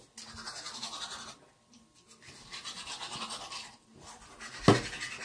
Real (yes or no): yes